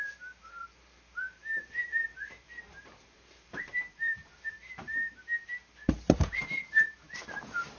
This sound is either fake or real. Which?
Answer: fake